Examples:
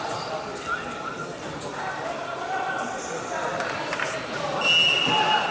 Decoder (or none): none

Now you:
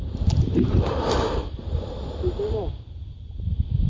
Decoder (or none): vocoder, BigVGAN v2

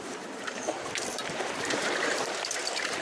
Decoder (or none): vocoder, BigVGAN v2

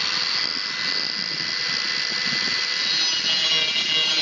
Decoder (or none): none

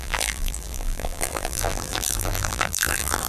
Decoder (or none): vocoder, BigVGAN v2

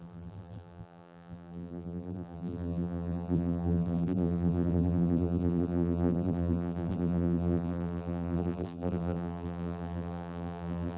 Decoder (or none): vocoder, BigVGAN v2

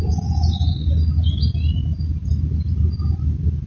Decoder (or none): none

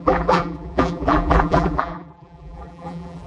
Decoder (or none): vocoder, BigVGAN v2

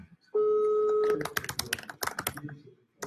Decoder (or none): none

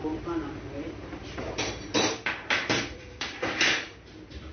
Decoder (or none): vocoder, BigVGAN v2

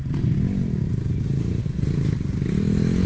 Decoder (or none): none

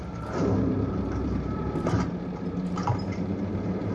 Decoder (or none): vocoder, BigVGAN v2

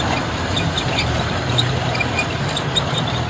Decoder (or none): vocoder, BigVGAN v2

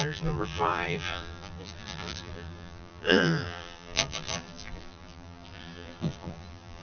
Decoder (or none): vocoder, BigVGAN v2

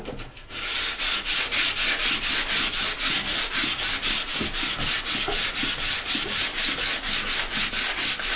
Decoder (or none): none